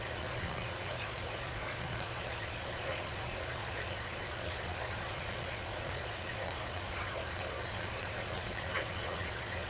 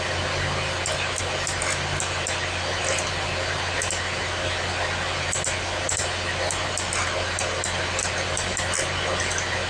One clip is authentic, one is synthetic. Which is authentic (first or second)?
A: second